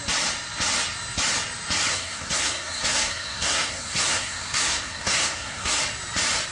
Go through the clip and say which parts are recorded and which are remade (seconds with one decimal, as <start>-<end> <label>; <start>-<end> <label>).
0.0-1.9 recorded; 1.9-5.8 remade; 5.8-6.5 recorded